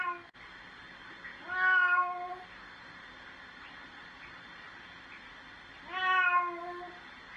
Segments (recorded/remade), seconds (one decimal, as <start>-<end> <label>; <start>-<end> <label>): 0.0-7.4 recorded